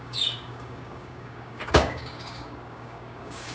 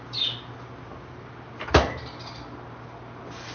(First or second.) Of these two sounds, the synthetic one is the first